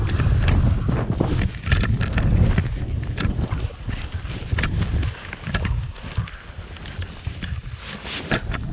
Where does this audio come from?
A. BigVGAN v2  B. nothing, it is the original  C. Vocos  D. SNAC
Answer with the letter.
B